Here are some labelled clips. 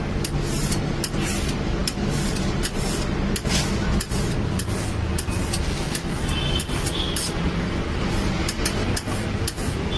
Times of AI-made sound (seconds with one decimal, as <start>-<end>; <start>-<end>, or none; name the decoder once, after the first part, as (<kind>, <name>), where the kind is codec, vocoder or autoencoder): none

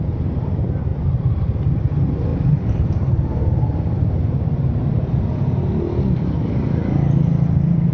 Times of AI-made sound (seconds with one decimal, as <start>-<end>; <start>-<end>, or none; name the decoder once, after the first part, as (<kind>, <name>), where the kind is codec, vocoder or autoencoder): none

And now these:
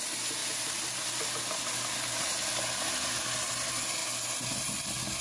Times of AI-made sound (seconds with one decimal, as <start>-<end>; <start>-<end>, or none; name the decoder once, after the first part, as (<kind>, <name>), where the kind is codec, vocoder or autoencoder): none